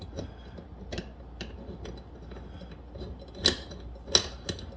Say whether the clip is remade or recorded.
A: recorded